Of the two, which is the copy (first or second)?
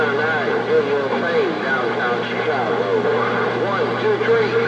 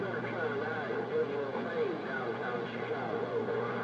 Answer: second